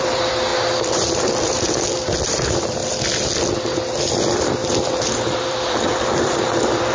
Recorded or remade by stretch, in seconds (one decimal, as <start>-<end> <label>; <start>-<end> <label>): 0.0-2.8 remade; 2.8-5.4 recorded; 5.4-6.9 remade